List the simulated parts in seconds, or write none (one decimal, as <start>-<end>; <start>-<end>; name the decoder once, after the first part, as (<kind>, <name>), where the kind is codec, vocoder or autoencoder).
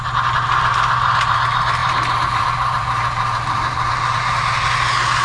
1.8-3.9 (vocoder, BigVGAN v2)